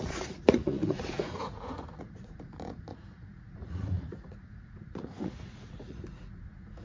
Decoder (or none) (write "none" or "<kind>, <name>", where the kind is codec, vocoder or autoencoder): vocoder, Vocos